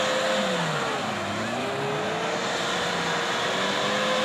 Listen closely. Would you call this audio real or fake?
real